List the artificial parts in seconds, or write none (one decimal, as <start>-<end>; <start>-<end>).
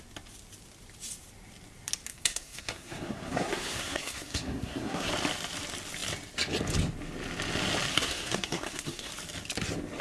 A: 2.1-5.1; 7.9-9.1